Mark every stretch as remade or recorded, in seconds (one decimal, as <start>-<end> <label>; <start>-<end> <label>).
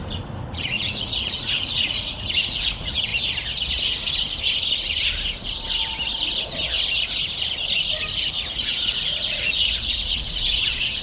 0.0-0.5 recorded; 0.5-3.1 remade; 3.1-8.3 recorded; 8.3-11.0 remade